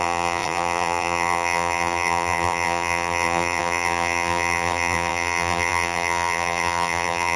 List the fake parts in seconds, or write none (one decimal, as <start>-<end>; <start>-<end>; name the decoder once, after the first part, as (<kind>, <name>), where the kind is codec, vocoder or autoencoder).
0.0-7.4 (vocoder, BigVGAN v2)